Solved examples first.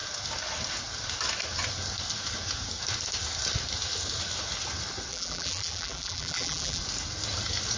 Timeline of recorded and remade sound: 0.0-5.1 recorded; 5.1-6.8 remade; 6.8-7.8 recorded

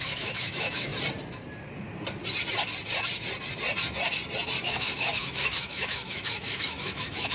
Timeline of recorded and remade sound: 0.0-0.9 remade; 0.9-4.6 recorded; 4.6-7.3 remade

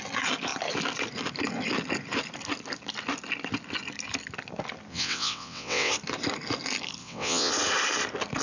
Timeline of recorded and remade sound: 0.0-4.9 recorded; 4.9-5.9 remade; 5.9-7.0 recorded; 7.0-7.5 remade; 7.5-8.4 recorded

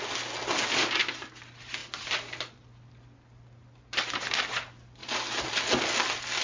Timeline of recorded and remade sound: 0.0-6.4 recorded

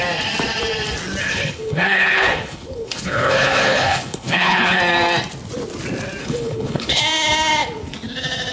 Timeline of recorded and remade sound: 0.0-1.2 recorded; 1.2-4.8 remade; 4.8-6.2 recorded; 6.2-7.0 remade; 7.0-8.5 recorded

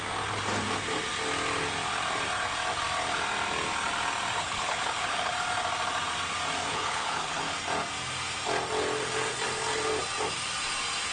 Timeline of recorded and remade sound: 0.0-4.4 recorded; 4.4-5.3 remade; 5.3-6.7 recorded; 6.7-7.4 remade; 7.4-11.1 recorded

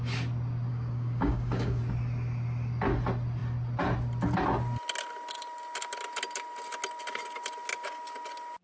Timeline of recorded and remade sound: 0.0-0.7 recorded; 0.7-1.8 remade; 1.8-8.6 recorded

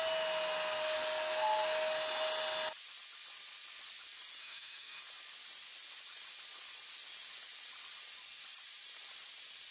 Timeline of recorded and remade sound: 0.0-4.4 recorded; 4.4-5.0 remade; 5.0-9.7 recorded